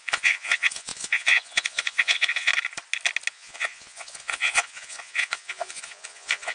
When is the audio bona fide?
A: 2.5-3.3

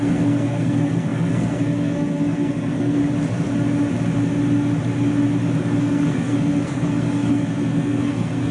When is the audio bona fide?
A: 3.0-5.8

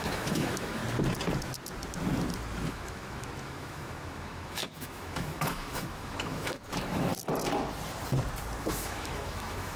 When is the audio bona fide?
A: 0.8-2.7; 7.1-8.6

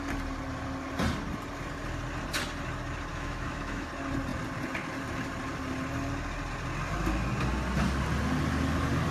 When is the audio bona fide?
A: 0.0-3.1; 3.9-9.1

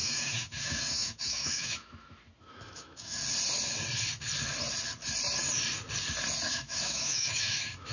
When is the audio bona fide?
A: 3.2-6.5

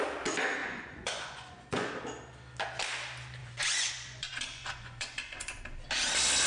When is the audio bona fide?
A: 0.0-0.6; 1.9-3.4; 5.6-6.5

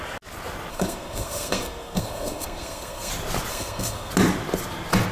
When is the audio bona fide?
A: 0.0-0.7; 3.1-3.5; 4.1-5.1

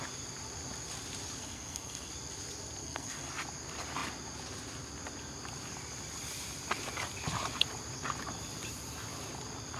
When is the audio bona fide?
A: 0.0-1.4; 2.1-2.8; 3.3-9.8